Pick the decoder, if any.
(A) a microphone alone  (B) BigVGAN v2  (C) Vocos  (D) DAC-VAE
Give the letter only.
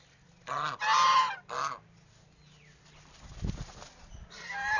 A